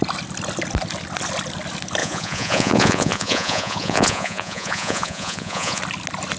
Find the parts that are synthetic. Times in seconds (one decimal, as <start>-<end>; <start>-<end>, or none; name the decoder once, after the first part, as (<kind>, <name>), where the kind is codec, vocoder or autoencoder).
2.0-5.8 (vocoder, Vocos)